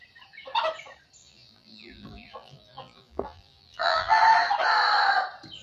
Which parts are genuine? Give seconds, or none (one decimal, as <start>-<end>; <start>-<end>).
0.0-1.2; 4.2-5.6